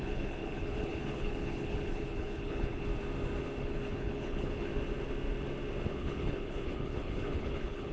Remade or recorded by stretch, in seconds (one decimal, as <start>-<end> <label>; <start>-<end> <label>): 0.0-2.9 remade; 2.9-3.6 recorded; 3.6-4.7 remade; 4.7-5.9 recorded; 5.9-7.9 remade